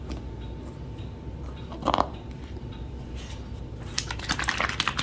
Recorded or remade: recorded